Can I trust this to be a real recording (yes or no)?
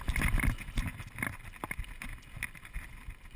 yes